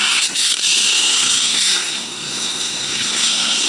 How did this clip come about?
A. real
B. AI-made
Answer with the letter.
B